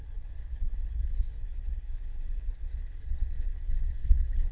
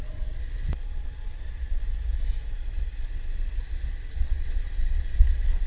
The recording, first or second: second